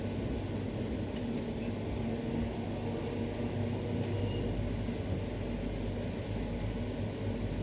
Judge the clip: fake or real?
real